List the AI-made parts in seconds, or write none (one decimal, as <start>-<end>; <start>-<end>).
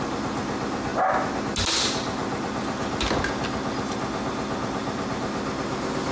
none